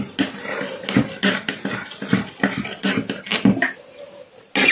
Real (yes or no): yes